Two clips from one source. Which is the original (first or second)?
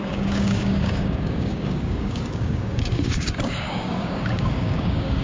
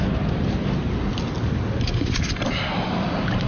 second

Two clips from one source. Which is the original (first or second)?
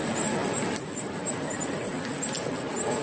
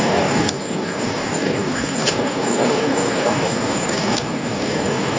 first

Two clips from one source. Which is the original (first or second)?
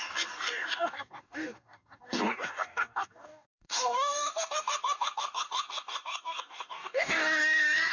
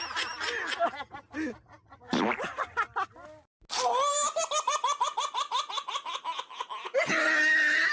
second